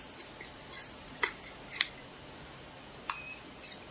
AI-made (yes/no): no